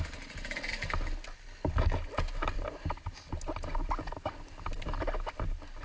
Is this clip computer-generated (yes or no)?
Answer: no